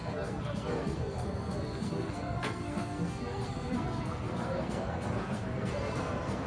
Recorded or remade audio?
remade